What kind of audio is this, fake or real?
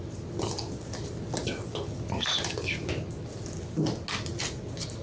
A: real